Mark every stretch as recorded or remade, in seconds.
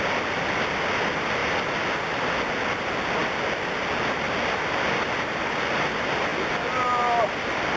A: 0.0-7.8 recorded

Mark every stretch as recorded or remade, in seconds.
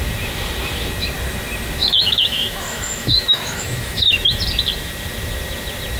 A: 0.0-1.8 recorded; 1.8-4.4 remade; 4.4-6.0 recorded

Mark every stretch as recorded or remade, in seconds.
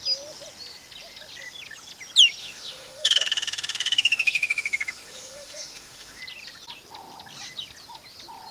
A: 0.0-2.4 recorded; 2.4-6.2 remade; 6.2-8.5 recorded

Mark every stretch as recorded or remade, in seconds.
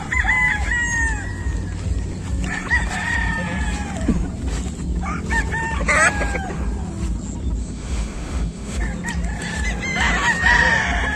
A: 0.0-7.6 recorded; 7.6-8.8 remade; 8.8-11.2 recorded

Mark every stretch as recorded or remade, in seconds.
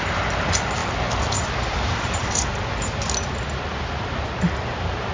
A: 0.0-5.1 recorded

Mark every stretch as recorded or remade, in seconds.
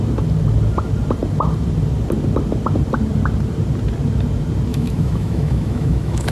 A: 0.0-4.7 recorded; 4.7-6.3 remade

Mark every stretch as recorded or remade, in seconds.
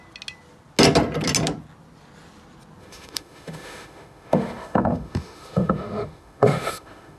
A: 0.0-2.8 recorded; 2.8-7.2 remade